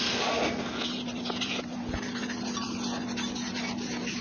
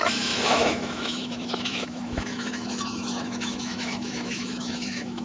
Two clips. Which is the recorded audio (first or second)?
first